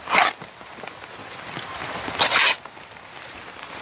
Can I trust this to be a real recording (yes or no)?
yes